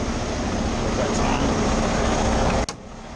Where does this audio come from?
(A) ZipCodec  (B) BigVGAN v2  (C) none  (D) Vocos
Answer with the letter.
C